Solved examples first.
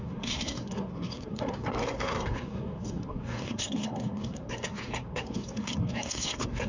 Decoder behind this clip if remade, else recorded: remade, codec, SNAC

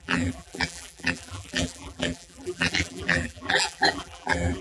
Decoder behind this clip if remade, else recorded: remade, vocoder, BigVGAN v2